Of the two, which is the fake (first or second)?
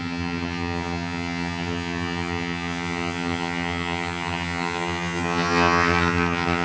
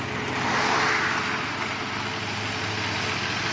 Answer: first